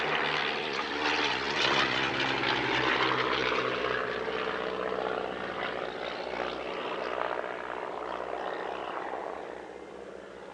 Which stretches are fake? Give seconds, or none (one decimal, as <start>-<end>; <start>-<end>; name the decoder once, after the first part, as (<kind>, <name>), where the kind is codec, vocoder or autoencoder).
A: 0.6-2.1 (vocoder, Vocos); 8.8-9.4